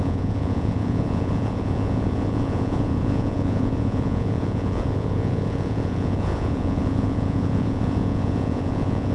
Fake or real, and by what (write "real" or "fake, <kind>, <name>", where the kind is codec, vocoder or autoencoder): fake, vocoder, Vocos